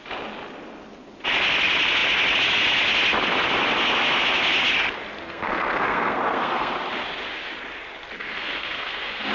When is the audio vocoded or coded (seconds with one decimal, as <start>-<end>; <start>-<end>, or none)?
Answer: 5.2-6.7; 8.2-9.3